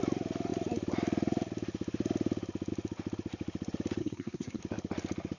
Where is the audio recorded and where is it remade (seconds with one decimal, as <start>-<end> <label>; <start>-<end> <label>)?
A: 0.0-4.0 recorded; 4.0-4.6 remade; 4.6-5.4 recorded